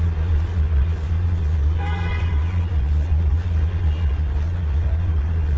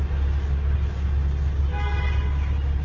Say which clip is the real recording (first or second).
second